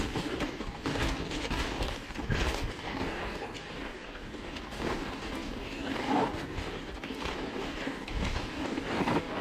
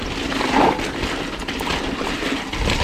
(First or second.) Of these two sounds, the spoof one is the first